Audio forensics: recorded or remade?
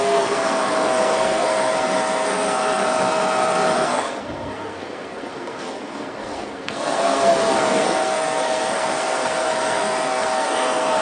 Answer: remade